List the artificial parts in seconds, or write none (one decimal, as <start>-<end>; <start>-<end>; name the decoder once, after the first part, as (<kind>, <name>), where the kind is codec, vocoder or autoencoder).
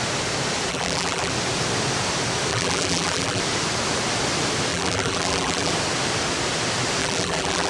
0.7-1.3 (vocoder, BigVGAN v2); 2.5-3.4; 4.7-5.7; 7.0-7.7